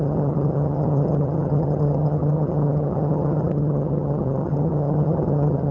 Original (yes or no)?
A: no